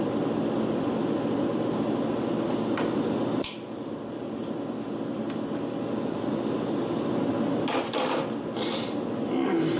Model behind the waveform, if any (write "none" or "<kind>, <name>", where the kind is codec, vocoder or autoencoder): none